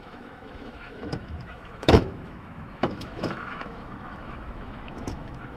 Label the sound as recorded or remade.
remade